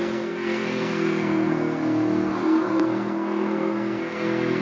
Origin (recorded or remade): remade